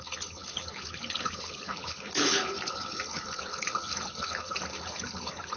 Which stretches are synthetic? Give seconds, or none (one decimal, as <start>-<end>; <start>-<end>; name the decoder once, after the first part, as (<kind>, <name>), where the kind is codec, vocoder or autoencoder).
0.0-5.6 (codec, HILCodec)

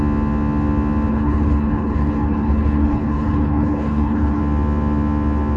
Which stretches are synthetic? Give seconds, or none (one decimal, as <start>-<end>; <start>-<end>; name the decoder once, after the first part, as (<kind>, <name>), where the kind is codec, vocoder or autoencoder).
1.1-4.4 (codec, HILCodec)

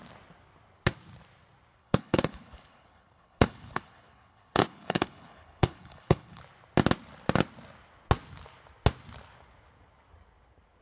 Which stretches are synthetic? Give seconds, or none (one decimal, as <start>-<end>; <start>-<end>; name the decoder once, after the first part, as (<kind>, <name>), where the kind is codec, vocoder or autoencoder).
1.8-6.4 (codec, HILCodec)

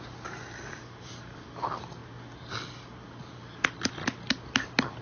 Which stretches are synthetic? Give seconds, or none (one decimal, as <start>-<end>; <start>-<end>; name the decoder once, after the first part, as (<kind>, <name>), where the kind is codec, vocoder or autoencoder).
none

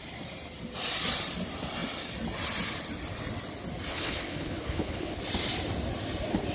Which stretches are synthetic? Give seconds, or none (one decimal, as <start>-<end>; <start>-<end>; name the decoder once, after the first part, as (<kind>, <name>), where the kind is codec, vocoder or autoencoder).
3.9-5.2 (codec, HILCodec)

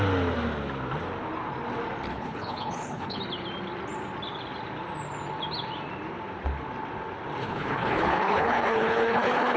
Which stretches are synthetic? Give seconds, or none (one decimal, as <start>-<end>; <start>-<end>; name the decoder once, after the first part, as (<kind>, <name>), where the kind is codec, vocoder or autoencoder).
2.1-3.2 (codec, HILCodec); 7.4-9.6

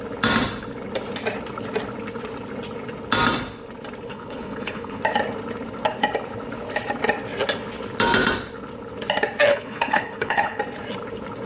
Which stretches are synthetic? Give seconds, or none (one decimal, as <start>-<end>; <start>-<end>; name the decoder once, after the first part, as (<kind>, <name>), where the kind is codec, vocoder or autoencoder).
4.1-5.0 (codec, HILCodec); 9.5-10.6